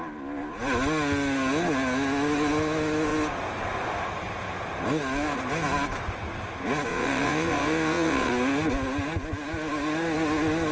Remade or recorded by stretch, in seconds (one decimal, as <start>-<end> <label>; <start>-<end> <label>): 0.0-6.9 recorded; 6.9-8.3 remade; 8.3-10.7 recorded